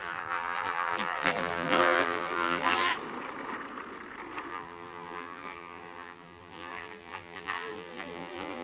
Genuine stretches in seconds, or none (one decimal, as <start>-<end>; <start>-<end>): 2.9-4.5